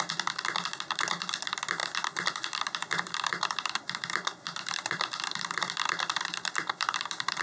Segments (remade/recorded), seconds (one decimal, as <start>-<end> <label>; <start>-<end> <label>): 0.0-7.4 remade